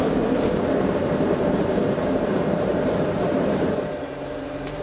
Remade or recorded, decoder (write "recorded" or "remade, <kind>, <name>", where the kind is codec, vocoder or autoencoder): remade, vocoder, BigVGAN v2